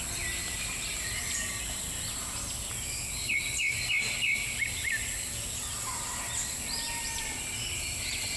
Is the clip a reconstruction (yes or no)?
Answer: no